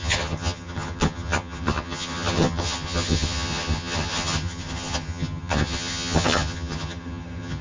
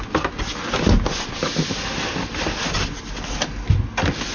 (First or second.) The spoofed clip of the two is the first